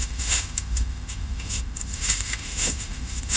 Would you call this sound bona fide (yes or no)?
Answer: no